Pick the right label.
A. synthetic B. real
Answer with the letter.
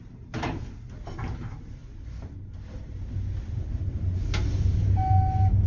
B